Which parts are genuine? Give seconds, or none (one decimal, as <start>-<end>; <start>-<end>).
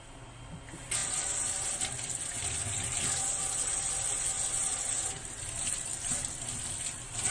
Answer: 0.0-7.3